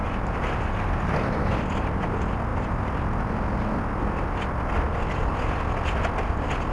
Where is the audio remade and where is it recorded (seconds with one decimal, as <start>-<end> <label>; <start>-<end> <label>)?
0.0-1.5 remade; 1.5-6.7 recorded

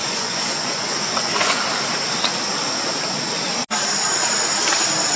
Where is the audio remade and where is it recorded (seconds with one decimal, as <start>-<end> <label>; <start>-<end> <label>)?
0.0-1.6 remade; 1.6-5.2 recorded